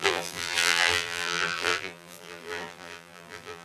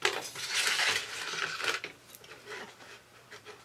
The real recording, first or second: second